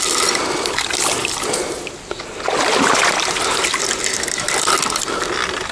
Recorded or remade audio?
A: recorded